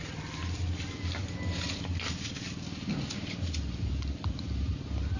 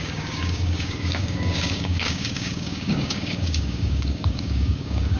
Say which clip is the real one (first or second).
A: first